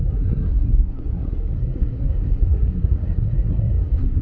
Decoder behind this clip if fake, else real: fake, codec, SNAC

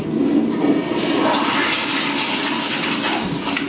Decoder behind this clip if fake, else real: real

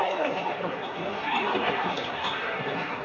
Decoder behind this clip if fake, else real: fake, codec, SNAC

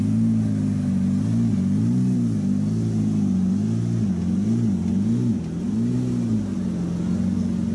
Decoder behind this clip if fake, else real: real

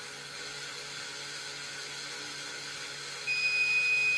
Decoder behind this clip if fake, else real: real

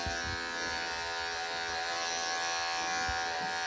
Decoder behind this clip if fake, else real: real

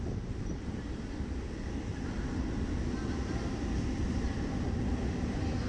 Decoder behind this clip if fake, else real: real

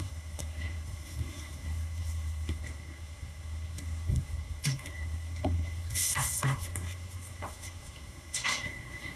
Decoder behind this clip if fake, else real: fake, codec, SNAC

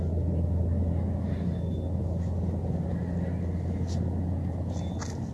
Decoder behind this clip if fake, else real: real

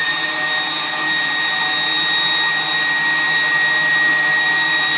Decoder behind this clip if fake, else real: real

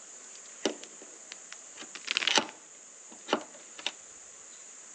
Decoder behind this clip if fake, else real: real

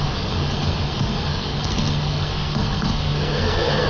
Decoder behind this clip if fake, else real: fake, codec, SNAC